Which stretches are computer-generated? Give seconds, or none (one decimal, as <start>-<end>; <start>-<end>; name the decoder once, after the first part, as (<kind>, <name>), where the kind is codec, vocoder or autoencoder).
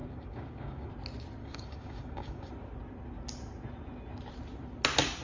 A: 0.0-0.9 (codec, DAC); 1.4-2.5